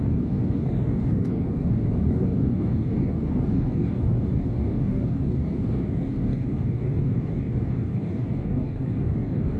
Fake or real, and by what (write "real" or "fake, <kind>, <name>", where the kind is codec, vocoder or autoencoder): fake, codec, DAC